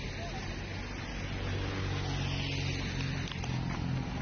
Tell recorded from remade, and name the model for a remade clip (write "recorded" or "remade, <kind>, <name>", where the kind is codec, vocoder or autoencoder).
recorded